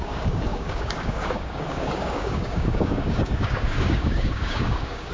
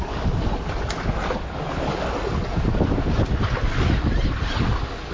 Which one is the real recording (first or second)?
second